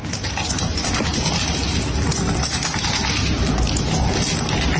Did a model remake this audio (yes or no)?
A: no